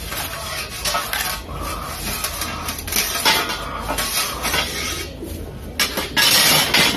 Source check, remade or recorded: recorded